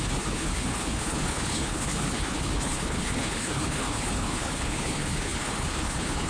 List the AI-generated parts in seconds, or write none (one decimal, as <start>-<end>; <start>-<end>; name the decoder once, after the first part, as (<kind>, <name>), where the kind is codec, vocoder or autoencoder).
0.0-6.3 (codec, HILCodec)